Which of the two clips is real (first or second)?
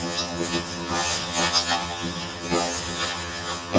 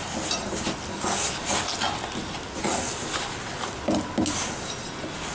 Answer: second